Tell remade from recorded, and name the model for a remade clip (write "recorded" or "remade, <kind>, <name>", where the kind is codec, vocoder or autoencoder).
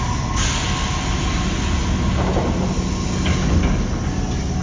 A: recorded